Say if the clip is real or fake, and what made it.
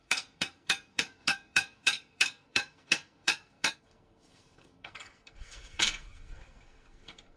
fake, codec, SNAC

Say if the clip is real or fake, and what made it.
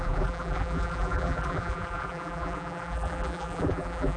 fake, vocoder, BigVGAN v2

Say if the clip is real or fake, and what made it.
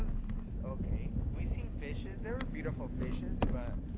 real